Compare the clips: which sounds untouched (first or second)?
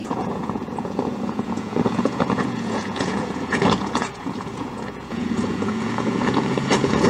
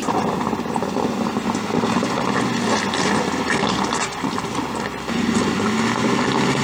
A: second